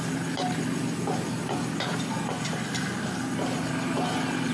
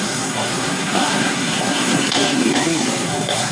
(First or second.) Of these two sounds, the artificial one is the second